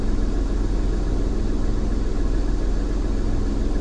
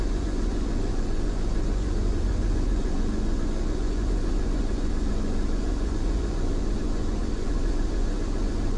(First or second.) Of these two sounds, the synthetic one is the second